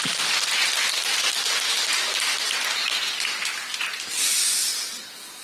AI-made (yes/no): no